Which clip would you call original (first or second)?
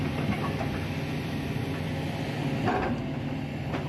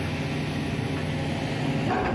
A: second